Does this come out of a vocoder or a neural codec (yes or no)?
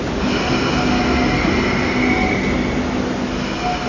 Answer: no